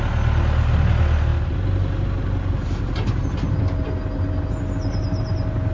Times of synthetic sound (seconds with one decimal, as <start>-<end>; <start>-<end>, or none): none